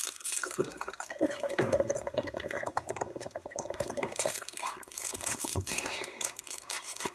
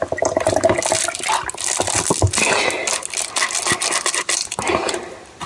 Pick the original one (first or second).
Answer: second